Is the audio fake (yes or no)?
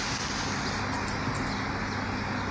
no